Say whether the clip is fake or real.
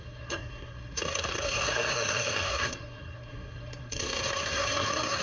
fake